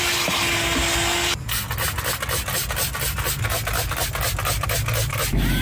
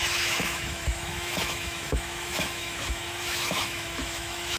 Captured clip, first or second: first